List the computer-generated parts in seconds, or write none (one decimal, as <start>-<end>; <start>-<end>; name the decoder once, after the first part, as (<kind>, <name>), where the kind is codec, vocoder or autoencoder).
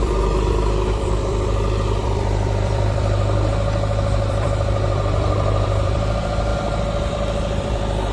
0.0-6.5 (vocoder, BigVGAN v2); 7.1-8.1